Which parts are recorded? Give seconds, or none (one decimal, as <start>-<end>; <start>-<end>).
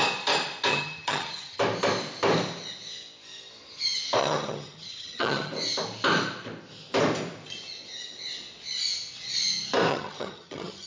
0.0-0.7; 1.6-4.2; 5.5-9.9